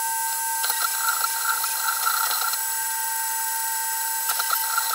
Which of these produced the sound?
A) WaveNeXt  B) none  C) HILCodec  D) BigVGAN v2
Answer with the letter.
B